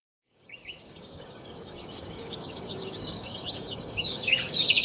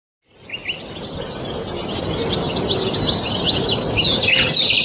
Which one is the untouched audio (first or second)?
second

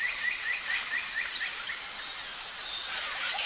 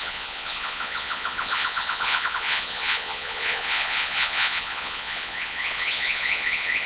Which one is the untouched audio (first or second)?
first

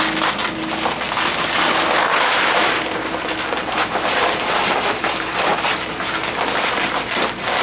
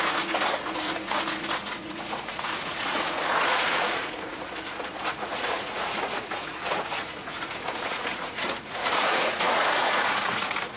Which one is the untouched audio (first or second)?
first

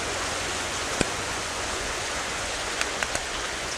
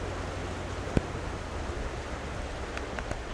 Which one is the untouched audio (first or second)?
second